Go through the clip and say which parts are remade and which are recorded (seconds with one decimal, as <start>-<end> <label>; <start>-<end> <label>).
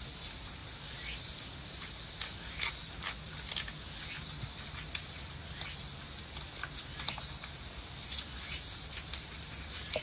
0.0-10.0 recorded